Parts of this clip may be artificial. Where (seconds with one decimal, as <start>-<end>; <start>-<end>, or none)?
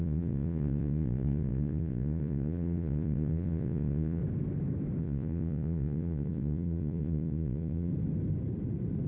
0.0-4.2; 5.0-7.9